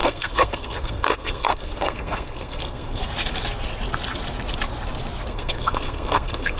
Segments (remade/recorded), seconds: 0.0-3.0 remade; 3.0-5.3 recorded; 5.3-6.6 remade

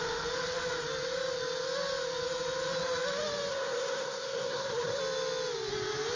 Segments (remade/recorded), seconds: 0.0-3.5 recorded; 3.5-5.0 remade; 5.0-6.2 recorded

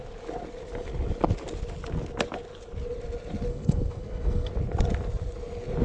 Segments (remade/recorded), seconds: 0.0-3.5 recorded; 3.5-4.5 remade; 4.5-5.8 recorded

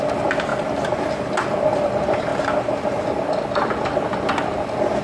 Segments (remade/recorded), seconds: 0.0-5.0 recorded

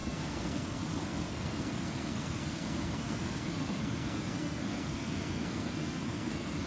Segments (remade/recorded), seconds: 0.0-6.7 remade